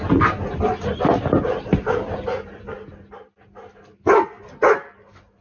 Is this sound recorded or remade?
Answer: recorded